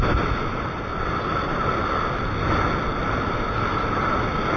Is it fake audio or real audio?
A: real